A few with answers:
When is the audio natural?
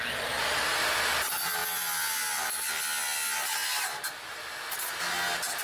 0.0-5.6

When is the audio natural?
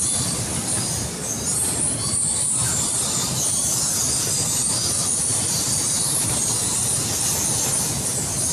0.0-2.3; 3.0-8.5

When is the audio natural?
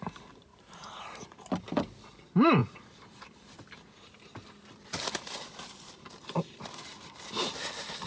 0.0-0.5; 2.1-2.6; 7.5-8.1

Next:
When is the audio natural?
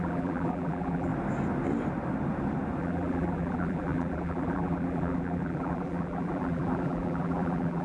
1.1-2.8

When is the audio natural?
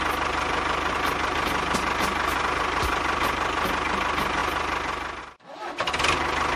0.0-6.6